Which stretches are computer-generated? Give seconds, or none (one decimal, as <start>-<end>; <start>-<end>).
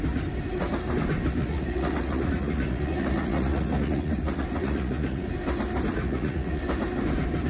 1.4-5.3; 5.9-6.6